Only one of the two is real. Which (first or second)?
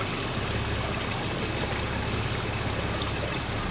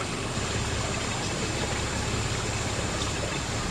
first